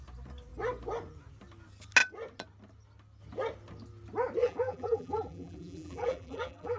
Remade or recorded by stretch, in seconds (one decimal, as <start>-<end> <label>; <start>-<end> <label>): 0.0-4.4 recorded; 4.4-6.8 remade